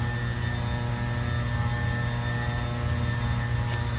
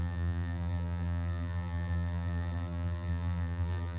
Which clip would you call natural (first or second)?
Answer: first